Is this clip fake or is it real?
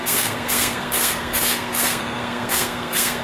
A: fake